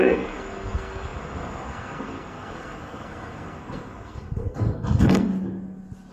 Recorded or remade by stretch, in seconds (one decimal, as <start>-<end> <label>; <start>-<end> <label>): 0.0-5.3 remade; 5.3-6.1 recorded